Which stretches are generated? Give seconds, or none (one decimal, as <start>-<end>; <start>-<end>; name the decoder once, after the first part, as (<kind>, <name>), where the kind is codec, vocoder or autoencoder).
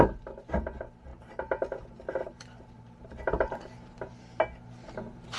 1.1-4.2 (vocoder, BigVGAN v2)